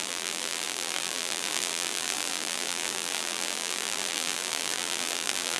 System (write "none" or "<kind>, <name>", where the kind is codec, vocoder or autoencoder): vocoder, BigVGAN v2